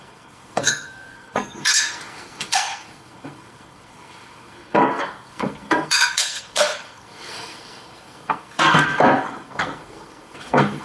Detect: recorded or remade remade